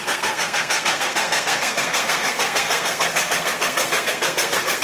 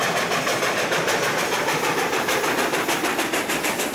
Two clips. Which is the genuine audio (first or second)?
second